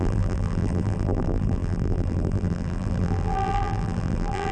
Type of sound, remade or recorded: remade